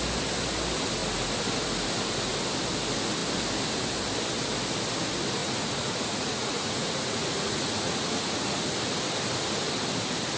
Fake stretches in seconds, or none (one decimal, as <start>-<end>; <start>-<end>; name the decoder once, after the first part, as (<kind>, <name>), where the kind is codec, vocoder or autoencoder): 5.4-8.7 (vocoder, Vocos)